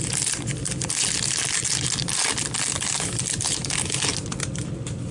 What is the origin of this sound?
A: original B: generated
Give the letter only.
A